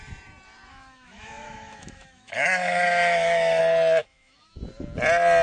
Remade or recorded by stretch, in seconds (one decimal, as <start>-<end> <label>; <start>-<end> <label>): 0.0-0.7 recorded; 0.7-3.6 remade; 3.6-4.0 recorded; 4.0-4.6 remade; 4.6-5.4 recorded